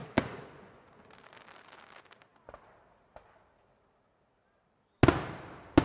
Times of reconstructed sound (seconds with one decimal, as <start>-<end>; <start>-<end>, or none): 0.0-1.0